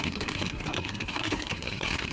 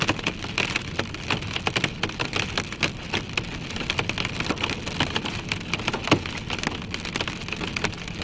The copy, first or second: first